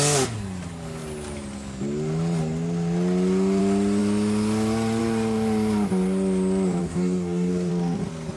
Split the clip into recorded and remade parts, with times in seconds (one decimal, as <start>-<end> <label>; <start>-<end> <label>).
0.0-6.8 recorded; 6.8-7.7 remade; 7.7-8.4 recorded